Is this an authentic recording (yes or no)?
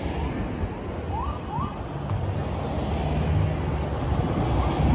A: yes